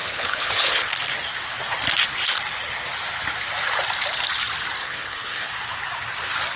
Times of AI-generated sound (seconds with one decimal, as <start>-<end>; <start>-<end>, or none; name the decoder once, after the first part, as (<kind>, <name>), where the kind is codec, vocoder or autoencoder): 0.0-0.9 (codec, HILCodec); 4.8-5.5